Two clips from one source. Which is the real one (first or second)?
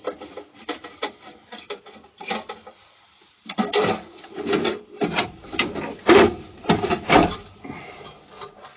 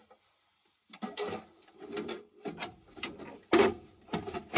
second